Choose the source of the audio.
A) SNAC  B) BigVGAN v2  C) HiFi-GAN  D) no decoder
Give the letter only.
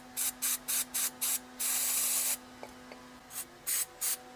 D